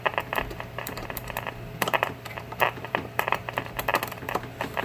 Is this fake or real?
fake